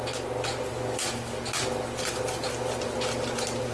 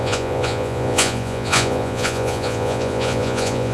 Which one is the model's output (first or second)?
second